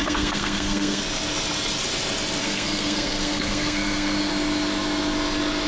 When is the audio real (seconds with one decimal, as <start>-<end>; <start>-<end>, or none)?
1.0-2.4; 4.3-5.7